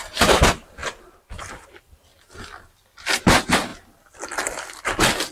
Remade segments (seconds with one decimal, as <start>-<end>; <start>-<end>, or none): 0.0-2.1; 3.2-3.7